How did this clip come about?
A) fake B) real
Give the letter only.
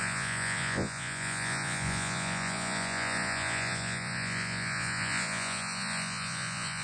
A